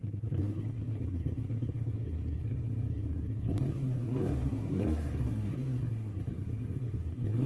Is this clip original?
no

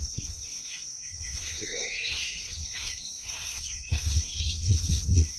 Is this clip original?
no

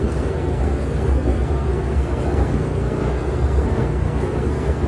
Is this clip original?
no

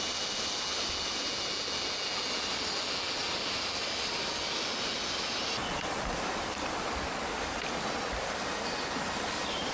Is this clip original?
yes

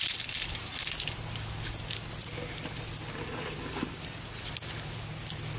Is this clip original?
yes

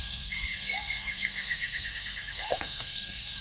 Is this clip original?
no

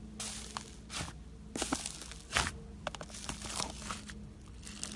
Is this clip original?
yes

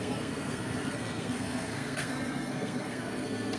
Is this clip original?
no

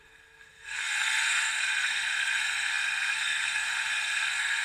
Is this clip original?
no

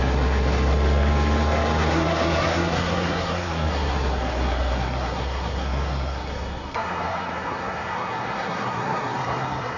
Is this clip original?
no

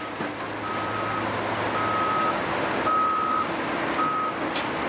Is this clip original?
yes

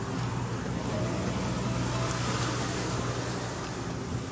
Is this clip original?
yes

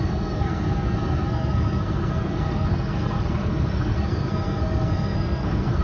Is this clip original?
no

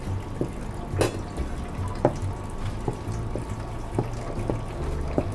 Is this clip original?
yes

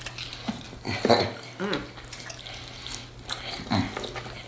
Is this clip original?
yes